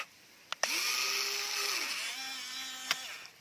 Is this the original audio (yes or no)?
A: yes